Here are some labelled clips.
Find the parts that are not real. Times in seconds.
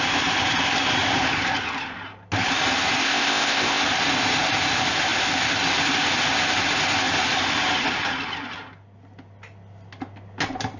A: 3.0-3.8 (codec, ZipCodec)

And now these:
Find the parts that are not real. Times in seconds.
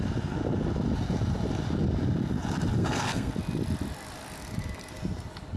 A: 2.8-3.3 (codec, SNAC)